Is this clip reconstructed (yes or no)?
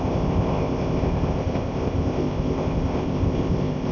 yes